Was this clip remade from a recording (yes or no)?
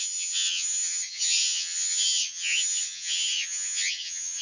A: yes